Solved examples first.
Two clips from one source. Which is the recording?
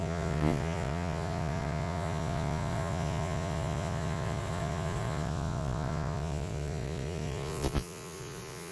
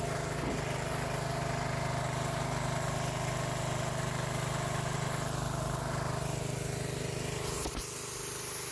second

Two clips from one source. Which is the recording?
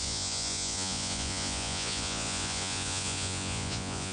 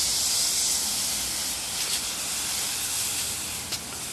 second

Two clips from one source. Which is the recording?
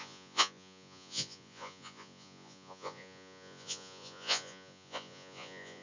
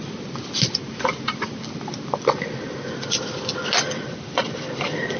second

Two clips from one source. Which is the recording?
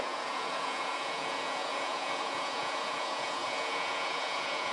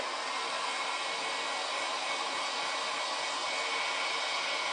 second